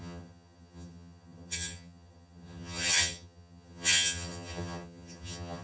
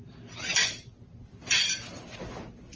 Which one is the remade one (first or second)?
first